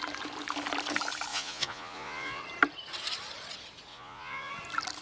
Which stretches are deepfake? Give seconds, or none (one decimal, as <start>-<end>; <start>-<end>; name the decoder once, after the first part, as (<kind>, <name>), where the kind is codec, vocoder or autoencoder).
1.3-2.4 (vocoder, Vocos); 3.9-4.5